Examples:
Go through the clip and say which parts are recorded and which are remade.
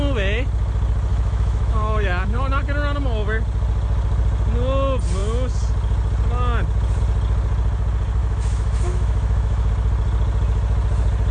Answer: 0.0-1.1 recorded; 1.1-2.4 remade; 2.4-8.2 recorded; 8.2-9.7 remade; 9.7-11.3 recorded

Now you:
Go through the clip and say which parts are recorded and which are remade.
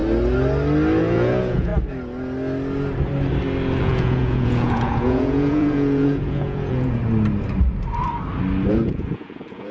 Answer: 0.0-1.0 recorded; 1.0-1.7 remade; 1.7-3.8 recorded; 3.8-7.0 remade; 7.0-8.7 recorded; 8.7-9.7 remade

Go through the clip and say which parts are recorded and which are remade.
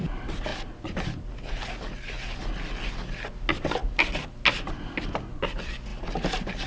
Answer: 0.0-6.7 recorded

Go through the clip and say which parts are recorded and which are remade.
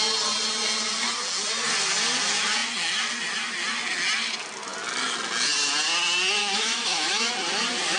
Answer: 0.0-6.4 recorded; 6.4-7.3 remade; 7.3-8.0 recorded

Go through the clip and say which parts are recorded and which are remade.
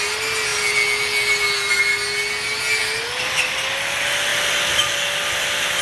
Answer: 0.0-5.8 recorded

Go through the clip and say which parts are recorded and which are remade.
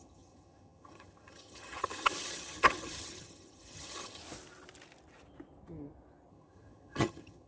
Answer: 0.0-4.2 remade; 4.2-6.3 recorded; 6.3-7.5 remade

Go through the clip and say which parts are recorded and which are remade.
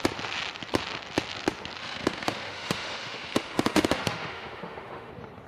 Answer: 0.0-1.8 recorded; 1.8-5.1 remade; 5.1-5.5 recorded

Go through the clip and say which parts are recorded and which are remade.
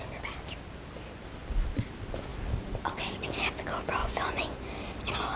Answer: 0.0-4.0 recorded; 4.0-4.7 remade; 4.7-5.4 recorded